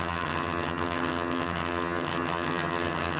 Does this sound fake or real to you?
fake